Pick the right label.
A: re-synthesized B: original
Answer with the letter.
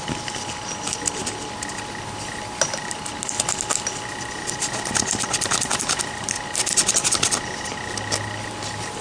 B